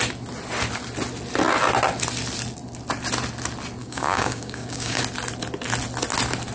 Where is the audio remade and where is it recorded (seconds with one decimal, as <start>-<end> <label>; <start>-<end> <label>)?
0.0-3.8 recorded; 3.8-5.0 remade; 5.0-6.5 recorded